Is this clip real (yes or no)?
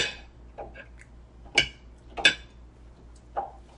yes